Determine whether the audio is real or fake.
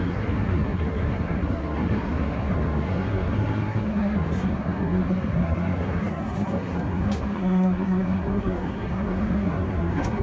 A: fake